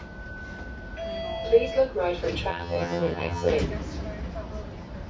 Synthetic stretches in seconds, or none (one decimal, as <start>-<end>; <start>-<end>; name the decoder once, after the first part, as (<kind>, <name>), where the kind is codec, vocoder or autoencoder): 2.5-3.5 (vocoder, HiFi-GAN)